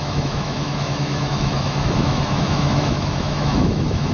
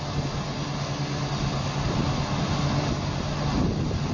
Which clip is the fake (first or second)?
first